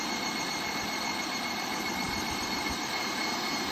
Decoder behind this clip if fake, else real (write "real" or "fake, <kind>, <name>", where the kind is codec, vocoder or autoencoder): fake, vocoder, BigVGAN v2